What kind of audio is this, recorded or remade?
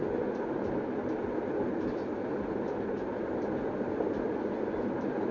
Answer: recorded